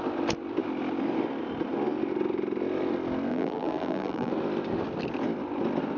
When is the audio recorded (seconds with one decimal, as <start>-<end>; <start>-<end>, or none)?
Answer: 0.0-3.3; 4.3-6.0